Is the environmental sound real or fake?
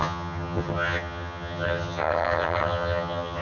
fake